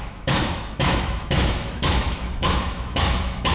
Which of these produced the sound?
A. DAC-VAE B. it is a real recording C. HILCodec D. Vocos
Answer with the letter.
A